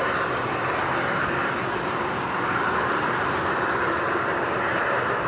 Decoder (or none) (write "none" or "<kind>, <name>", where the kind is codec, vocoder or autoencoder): none